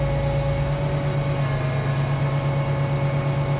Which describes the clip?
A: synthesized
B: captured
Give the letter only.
B